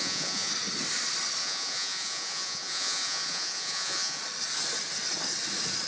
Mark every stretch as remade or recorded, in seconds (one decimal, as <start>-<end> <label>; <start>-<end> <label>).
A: 0.0-0.5 remade; 0.5-1.4 recorded; 1.4-4.2 remade; 4.2-5.9 recorded